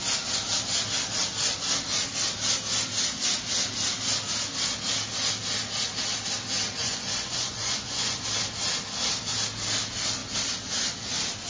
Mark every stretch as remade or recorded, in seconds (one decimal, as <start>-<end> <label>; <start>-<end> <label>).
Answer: 0.0-6.8 recorded; 6.8-8.2 remade; 8.2-11.5 recorded